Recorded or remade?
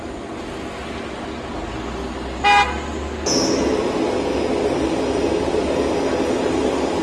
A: recorded